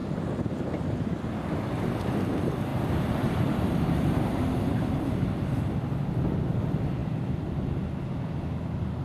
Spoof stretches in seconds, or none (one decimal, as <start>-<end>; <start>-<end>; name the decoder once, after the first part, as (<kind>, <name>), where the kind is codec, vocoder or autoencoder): 2.7-5.1 (vocoder, BigVGAN v2); 7.0-7.7

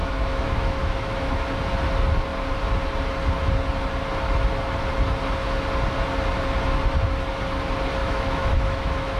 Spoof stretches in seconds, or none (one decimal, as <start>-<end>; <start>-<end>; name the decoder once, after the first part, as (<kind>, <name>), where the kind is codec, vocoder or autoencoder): 0.0-1.3 (autoencoder, DAC-VAE); 8.0-9.2

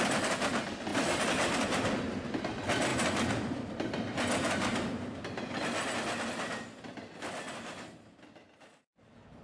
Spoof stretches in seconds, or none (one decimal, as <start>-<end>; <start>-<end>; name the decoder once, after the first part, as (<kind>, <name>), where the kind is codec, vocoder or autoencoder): none

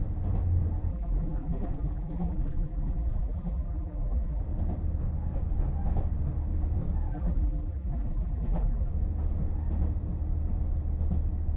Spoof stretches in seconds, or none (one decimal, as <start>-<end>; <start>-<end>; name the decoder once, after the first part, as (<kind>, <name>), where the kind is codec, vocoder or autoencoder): 0.9-4.4 (vocoder, BigVGAN v2); 7.1-8.9

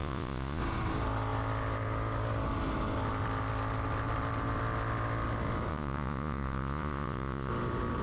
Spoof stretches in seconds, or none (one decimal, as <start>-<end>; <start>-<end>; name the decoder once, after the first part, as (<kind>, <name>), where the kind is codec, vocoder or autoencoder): 0.0-0.6 (vocoder, Vocos); 5.7-7.5